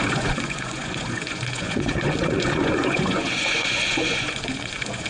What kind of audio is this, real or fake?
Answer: fake